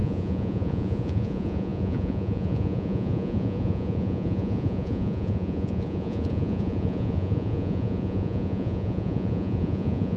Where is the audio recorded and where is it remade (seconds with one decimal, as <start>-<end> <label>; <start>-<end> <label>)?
0.0-10.2 remade